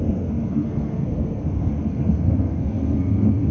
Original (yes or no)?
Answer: no